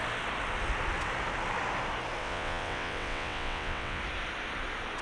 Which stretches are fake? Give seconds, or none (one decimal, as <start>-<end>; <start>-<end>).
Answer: 2.2-4.0